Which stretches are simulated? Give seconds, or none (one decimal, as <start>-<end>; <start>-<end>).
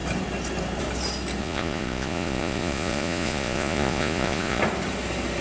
1.4-4.6